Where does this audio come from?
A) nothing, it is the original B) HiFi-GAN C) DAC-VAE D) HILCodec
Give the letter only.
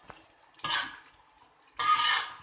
A